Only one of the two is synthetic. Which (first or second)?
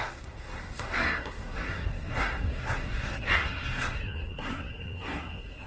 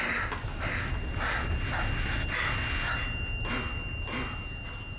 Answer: first